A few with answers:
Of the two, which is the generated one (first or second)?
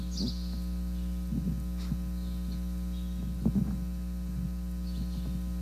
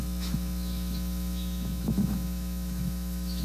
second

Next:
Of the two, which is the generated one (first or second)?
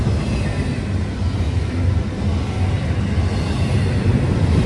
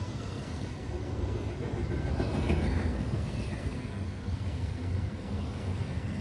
second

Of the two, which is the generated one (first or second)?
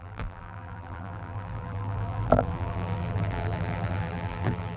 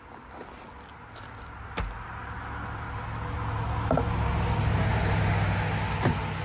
first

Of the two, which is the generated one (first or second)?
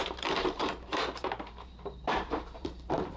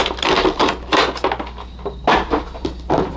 first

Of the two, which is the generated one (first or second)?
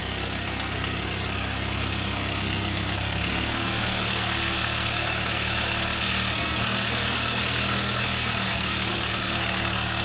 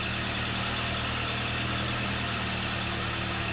first